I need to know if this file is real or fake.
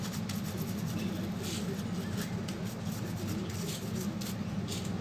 real